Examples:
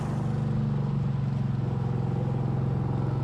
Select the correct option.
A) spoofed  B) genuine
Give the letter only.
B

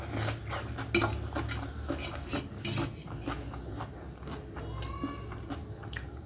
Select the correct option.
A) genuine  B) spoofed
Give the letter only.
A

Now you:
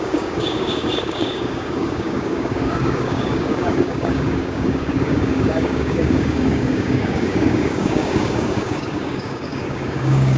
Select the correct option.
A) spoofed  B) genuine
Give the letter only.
A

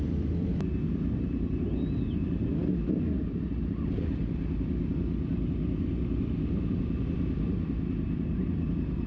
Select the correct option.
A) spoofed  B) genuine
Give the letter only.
B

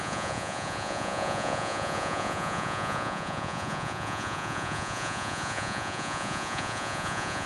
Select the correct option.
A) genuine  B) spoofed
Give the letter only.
B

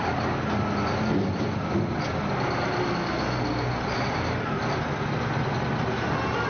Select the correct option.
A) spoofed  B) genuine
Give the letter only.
B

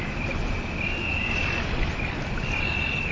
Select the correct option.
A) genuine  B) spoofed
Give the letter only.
A